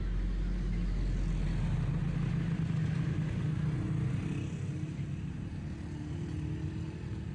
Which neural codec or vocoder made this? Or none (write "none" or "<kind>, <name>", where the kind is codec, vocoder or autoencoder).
none